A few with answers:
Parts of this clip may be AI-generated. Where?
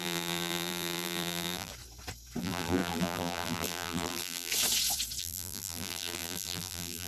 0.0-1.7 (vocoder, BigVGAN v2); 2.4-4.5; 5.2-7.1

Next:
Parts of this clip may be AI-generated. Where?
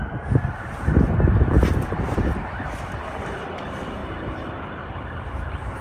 4.0-5.8 (vocoder, BigVGAN v2)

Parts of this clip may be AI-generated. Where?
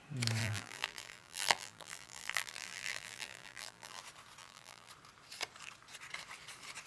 0.4-4.0 (vocoder, BigVGAN v2); 4.4-4.9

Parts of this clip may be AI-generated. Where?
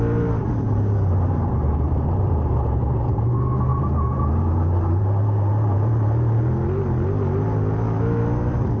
0.4-3.3 (vocoder, BigVGAN v2); 3.7-5.0